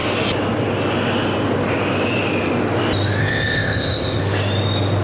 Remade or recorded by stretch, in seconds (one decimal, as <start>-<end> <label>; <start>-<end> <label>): 0.0-3.2 recorded; 3.2-4.2 remade; 4.2-5.0 recorded

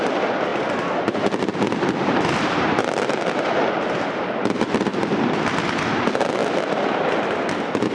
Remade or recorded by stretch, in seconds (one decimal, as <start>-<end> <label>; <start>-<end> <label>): 0.0-4.9 remade; 4.9-5.8 recorded; 5.8-6.4 remade; 6.4-7.9 recorded